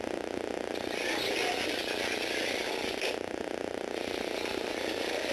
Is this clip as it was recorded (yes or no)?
yes